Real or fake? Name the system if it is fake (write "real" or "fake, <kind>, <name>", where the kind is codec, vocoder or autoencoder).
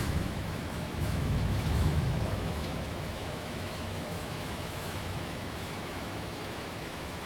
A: fake, autoencoder, DAC-VAE